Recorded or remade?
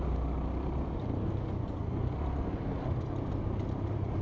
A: recorded